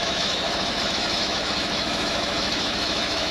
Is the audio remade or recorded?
remade